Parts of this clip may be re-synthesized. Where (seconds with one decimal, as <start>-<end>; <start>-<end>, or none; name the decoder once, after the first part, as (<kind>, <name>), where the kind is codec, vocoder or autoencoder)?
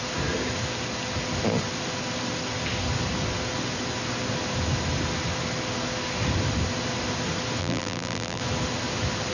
7.6-8.4 (vocoder, BigVGAN v2)